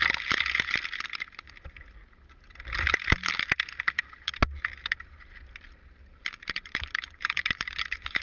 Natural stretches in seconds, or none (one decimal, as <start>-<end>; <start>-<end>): 0.0-5.8